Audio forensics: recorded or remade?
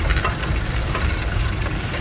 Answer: recorded